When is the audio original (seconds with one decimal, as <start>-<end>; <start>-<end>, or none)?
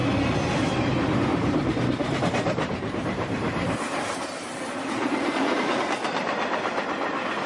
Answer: 0.0-1.3; 5.8-7.5